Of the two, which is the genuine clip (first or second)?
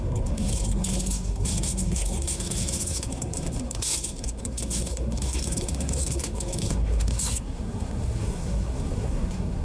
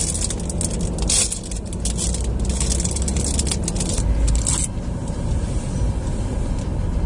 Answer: second